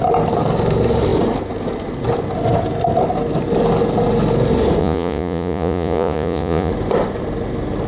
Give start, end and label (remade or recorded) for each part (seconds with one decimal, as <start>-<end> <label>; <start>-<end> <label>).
0.0-4.8 recorded; 4.8-6.7 remade; 6.7-7.9 recorded